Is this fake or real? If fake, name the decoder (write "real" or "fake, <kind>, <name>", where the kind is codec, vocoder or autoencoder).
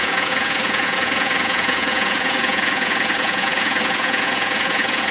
fake, vocoder, Vocos